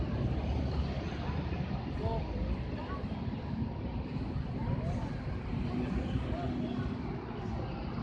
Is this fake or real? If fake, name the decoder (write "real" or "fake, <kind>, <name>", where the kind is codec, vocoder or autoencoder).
real